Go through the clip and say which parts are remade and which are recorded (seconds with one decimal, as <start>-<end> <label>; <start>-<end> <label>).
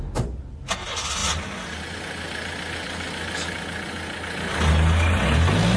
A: 0.0-5.8 recorded